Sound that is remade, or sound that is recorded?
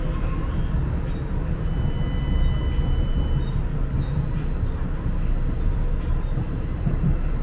recorded